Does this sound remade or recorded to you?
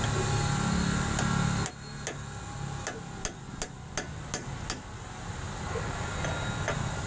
recorded